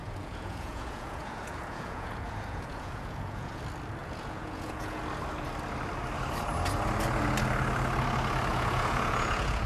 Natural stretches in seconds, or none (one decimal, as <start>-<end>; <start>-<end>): 3.6-4.0; 5.0-8.5